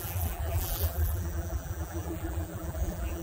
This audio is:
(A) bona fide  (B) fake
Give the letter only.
B